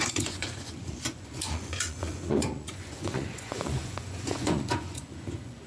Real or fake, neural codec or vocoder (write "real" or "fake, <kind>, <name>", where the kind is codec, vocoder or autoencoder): fake, vocoder, Vocos